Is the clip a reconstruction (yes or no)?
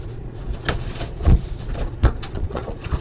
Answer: yes